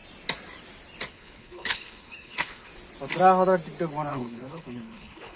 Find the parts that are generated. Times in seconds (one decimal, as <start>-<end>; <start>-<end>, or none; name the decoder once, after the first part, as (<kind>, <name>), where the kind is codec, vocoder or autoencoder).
1.1-2.7 (codec, HILCodec); 4.1-5.4